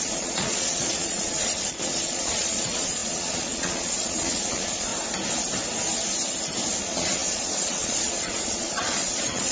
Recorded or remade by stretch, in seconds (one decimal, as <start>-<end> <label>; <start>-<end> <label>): 0.0-4.9 remade; 4.9-6.8 recorded; 6.8-9.5 remade